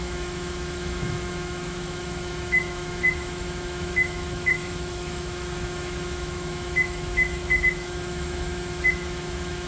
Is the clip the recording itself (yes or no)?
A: no